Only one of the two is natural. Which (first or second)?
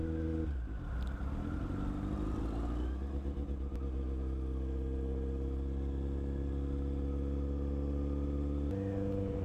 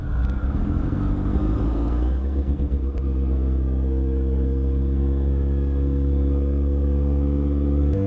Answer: first